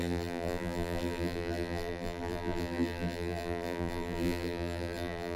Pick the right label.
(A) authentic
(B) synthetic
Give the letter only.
B